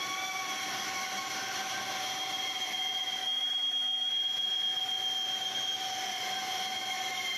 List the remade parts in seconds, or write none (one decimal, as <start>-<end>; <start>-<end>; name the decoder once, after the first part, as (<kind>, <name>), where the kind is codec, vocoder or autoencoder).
3.2-4.1 (autoencoder, DAC-VAE)